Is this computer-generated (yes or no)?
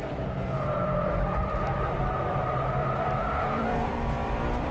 yes